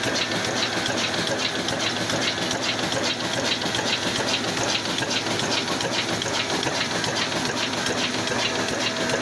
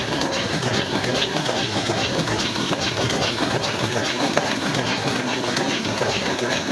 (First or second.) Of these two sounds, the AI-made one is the second